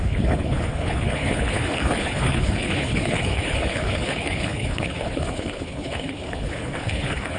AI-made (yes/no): yes